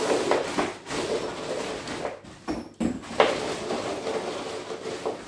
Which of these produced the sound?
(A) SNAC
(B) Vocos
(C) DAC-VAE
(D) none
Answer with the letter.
D